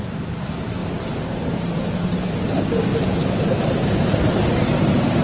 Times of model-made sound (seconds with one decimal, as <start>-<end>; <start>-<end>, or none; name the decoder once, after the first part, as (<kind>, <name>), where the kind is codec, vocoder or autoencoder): none